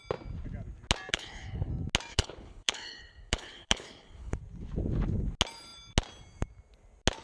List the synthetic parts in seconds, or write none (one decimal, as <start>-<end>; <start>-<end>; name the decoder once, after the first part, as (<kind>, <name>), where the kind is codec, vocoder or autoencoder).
1.1-1.7 (codec, HILCodec); 2.1-4.4